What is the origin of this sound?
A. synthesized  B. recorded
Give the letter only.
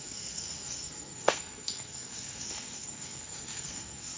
A